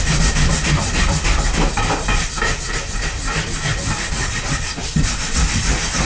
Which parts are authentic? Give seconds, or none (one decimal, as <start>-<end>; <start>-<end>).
0.0-6.0

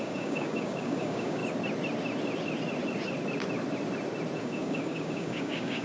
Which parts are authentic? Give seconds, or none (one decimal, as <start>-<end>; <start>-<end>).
1.4-4.4

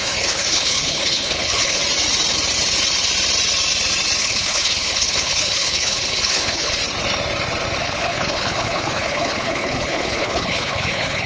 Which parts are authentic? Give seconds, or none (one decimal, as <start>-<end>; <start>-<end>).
1.8-4.2; 6.8-7.8

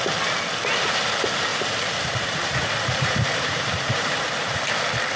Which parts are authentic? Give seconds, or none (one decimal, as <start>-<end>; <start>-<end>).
0.0-1.5; 4.6-5.2

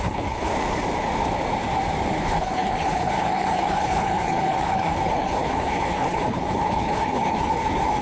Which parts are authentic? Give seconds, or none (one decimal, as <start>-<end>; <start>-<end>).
0.5-2.2

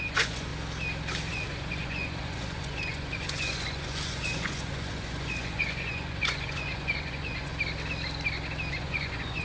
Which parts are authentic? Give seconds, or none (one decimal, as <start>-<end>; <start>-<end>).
0.5-1.3; 7.5-8.7